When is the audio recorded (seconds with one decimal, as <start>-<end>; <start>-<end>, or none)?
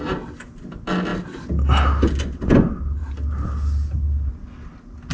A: 0.0-5.1